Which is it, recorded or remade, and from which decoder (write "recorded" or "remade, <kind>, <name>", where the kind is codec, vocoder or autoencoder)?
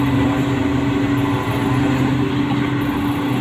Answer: recorded